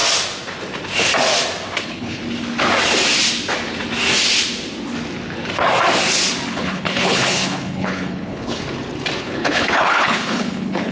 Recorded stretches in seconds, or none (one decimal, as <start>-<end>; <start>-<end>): 0.0-1.8; 2.2-6.5; 8.6-9.2